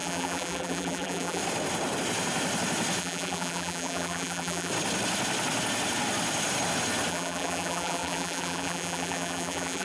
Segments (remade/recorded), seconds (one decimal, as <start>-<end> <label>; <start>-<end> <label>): 0.0-1.4 remade; 1.4-3.0 recorded; 3.0-4.7 remade; 4.7-7.1 recorded; 7.1-9.8 remade